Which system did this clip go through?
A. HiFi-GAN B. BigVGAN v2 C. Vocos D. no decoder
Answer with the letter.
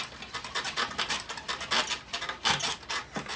D